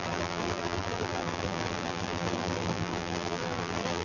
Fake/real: fake